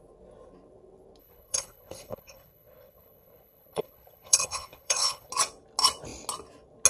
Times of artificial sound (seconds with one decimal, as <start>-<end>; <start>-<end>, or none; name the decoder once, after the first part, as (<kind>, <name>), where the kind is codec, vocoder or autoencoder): 1.2-5.3 (codec, HILCodec)

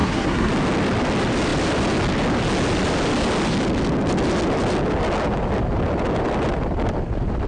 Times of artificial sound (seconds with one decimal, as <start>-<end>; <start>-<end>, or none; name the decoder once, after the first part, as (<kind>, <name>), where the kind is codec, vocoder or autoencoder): 0.0-0.5 (codec, SNAC)

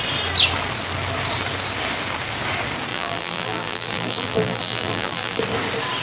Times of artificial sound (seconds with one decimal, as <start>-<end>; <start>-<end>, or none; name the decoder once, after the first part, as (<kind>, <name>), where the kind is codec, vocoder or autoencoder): 2.9-5.4 (vocoder, BigVGAN v2)